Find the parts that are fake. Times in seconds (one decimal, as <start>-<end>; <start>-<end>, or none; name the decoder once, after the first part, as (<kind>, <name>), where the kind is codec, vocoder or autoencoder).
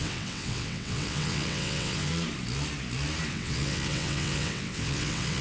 0.0-2.1 (vocoder, WaveNeXt); 3.3-5.4